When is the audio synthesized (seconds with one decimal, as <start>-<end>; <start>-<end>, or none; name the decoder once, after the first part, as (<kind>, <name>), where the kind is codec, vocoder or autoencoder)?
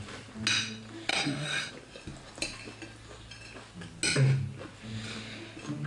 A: 1.1-1.7 (codec, SNAC)